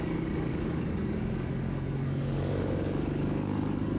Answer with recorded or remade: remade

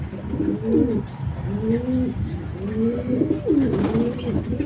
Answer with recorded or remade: recorded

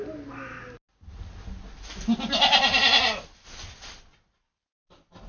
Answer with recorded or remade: recorded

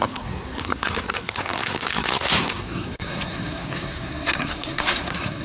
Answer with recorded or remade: remade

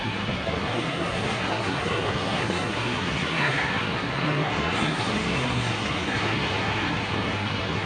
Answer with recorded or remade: remade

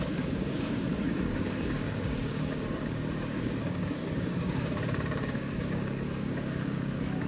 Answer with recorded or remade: remade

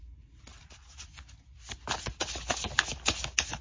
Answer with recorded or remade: recorded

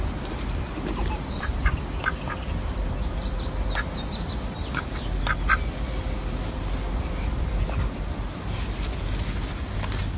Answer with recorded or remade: recorded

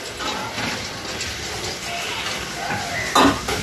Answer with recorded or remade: recorded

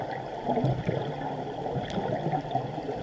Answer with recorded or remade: recorded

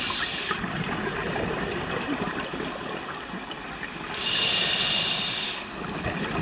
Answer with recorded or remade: recorded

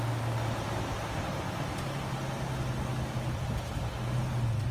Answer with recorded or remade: recorded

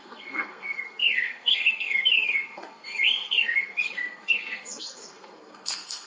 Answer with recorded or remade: remade